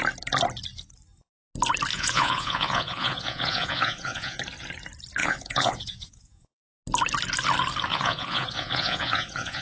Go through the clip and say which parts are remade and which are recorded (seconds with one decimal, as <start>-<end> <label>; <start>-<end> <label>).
0.0-1.9 recorded; 1.9-4.4 remade; 4.4-5.2 recorded; 5.2-6.6 remade; 6.6-7.9 recorded; 7.9-9.6 remade